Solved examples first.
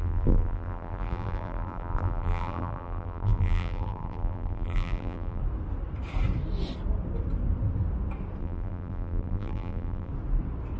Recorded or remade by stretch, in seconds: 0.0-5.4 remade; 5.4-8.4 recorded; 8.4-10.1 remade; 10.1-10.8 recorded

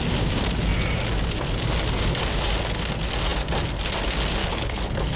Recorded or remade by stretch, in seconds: 0.0-4.4 recorded; 4.4-5.2 remade

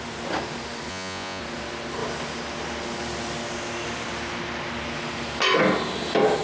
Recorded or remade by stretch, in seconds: 0.0-0.9 recorded; 0.9-1.4 remade; 1.4-6.4 recorded

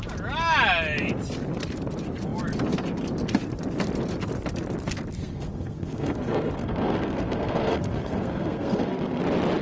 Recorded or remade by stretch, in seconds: 0.0-5.2 recorded; 5.2-9.2 remade; 9.2-9.6 recorded